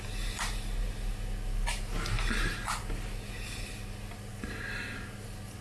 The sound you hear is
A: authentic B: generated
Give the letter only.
A